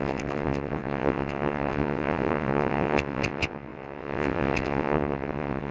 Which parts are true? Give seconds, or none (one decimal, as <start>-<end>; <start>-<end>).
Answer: none